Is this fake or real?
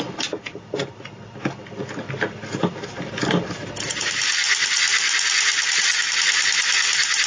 real